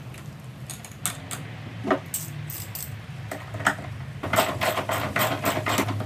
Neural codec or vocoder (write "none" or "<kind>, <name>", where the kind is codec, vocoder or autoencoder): none